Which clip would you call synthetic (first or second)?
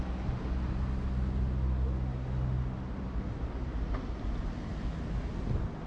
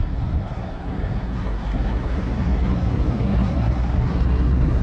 second